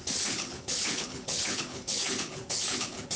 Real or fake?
fake